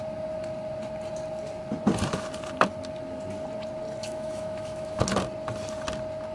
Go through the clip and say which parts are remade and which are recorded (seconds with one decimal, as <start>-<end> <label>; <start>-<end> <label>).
0.0-4.0 recorded; 4.0-5.0 remade; 5.0-6.3 recorded